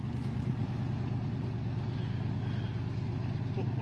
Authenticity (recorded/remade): recorded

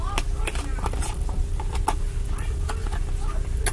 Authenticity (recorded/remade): recorded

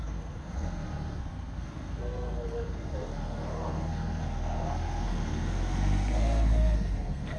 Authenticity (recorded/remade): remade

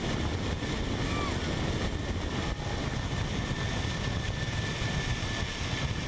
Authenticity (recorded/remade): recorded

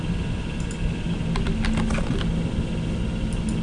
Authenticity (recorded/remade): recorded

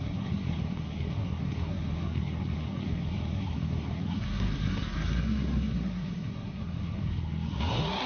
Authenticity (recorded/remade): remade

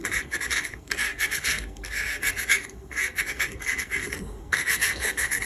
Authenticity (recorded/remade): remade